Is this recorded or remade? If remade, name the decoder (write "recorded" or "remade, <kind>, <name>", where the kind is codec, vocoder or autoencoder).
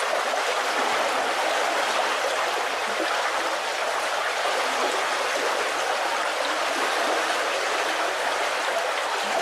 recorded